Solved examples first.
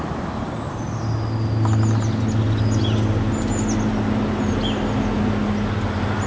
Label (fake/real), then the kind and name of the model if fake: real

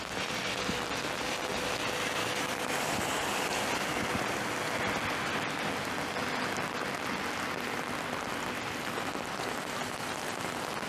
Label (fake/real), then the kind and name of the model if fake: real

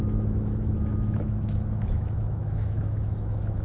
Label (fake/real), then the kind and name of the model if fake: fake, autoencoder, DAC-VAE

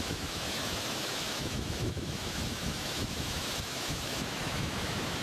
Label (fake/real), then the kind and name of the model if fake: fake, autoencoder, DAC-VAE